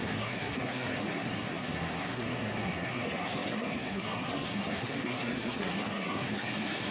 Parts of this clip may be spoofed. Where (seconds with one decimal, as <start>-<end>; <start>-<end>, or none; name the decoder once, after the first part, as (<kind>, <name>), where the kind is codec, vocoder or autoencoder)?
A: 0.0-6.9 (codec, SNAC)